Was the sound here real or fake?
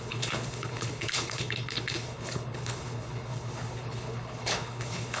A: fake